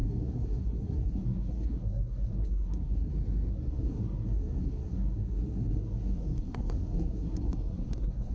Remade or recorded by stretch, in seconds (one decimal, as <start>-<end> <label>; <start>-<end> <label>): 0.0-3.1 remade; 3.1-3.5 recorded; 3.5-8.3 remade